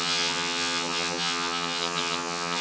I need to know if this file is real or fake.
fake